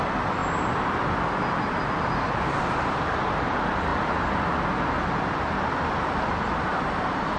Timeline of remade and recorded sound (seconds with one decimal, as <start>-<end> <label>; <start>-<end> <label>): 0.0-0.4 remade; 0.4-2.6 recorded; 2.6-3.9 remade; 3.9-6.4 recorded; 6.4-7.4 remade

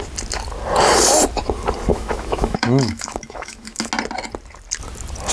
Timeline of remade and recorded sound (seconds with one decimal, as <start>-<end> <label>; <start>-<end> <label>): 0.0-1.9 recorded; 1.9-3.9 remade; 3.9-5.3 recorded